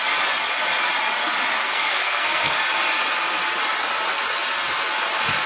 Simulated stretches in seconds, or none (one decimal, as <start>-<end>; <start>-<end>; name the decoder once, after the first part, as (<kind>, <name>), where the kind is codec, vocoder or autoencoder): 1.6-2.6 (codec, SNAC)